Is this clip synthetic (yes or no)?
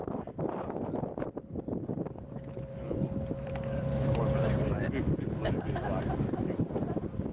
yes